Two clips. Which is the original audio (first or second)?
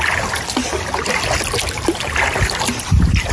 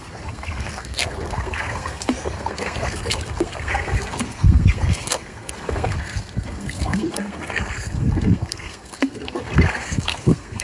first